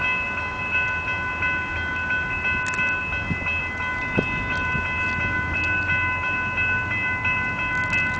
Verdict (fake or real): real